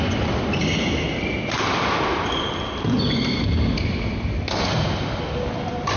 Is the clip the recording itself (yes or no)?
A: yes